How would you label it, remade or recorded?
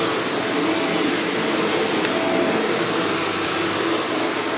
recorded